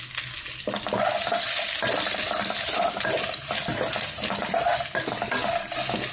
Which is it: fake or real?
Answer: real